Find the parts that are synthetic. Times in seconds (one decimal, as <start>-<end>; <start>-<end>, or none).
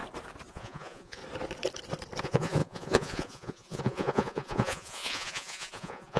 0.5-1.2; 2.2-6.2